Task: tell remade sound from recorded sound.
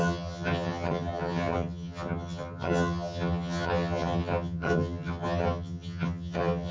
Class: remade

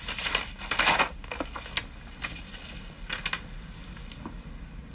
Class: recorded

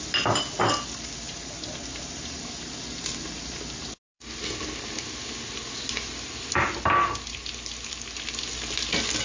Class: recorded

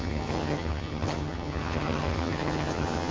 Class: remade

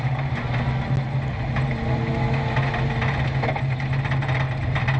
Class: recorded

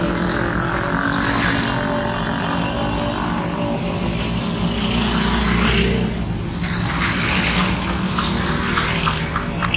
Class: recorded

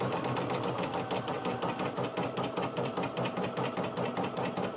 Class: recorded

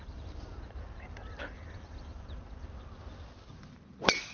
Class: recorded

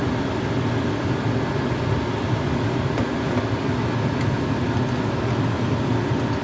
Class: recorded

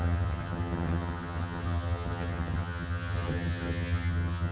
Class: remade